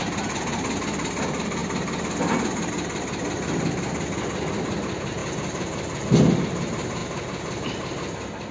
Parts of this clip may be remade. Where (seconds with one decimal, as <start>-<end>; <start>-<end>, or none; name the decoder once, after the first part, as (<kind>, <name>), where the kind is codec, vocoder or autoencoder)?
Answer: none